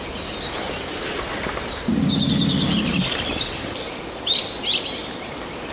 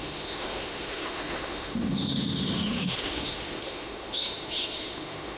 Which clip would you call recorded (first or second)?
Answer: first